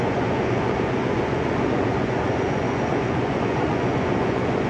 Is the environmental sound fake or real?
fake